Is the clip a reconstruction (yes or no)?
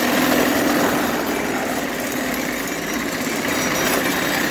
no